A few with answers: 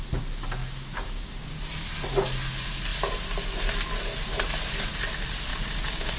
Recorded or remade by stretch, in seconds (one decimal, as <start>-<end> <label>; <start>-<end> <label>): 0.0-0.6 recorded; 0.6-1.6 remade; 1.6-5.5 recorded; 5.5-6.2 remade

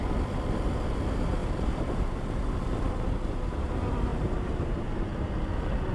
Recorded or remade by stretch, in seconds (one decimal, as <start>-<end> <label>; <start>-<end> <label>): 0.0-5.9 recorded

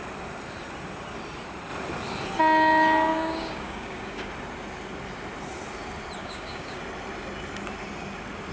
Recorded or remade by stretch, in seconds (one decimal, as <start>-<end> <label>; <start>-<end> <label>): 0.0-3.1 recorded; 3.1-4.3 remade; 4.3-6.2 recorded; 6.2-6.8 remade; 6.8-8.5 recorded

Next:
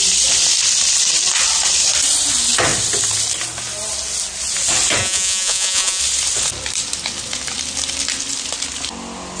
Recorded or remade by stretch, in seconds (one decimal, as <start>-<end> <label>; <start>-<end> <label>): 0.0-5.0 recorded; 5.0-6.0 remade; 6.0-9.4 recorded

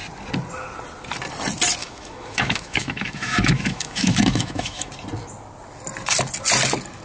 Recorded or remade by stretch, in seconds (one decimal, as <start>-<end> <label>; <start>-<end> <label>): 0.0-1.8 recorded; 1.8-4.9 remade; 4.9-7.0 recorded